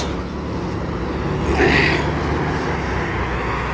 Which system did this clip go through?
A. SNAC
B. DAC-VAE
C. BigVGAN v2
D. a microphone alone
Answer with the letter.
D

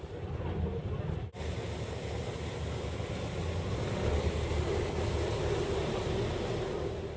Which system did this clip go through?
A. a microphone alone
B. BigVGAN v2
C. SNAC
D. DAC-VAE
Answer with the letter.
A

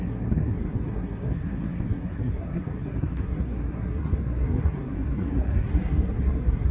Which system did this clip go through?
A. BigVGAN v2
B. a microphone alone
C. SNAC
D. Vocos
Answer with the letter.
C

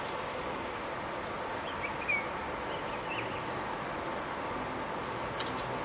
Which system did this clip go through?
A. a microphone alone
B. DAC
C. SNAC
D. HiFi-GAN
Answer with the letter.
A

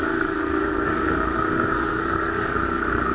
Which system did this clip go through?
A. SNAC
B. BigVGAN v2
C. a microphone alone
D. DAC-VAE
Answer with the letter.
A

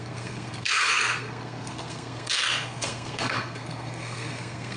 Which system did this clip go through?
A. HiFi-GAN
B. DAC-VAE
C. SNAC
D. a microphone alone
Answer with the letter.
C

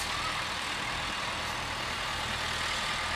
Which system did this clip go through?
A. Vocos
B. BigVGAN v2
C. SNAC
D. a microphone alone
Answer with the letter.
D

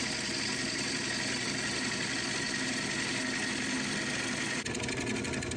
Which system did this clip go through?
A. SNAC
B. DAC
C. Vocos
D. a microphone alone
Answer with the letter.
D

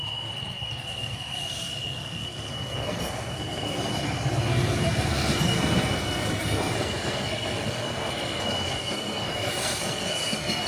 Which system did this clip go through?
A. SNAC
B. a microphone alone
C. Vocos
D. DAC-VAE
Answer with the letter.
A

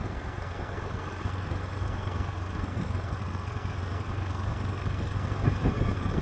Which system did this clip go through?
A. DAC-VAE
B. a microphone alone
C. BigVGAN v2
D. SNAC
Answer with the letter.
D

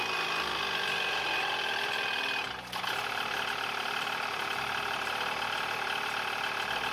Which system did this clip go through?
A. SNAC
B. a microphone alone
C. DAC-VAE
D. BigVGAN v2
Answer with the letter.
B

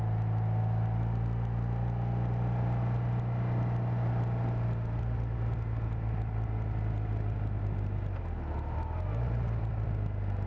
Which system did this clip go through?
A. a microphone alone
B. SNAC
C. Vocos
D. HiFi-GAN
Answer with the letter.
A